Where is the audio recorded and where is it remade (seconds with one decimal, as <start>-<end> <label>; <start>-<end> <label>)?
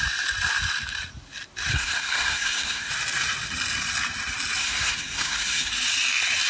0.0-1.7 recorded; 1.7-2.9 remade; 2.9-4.6 recorded; 4.6-5.7 remade; 5.7-6.5 recorded